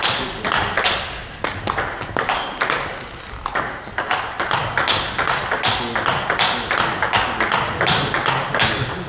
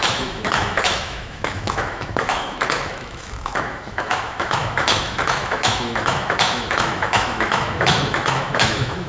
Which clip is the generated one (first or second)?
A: second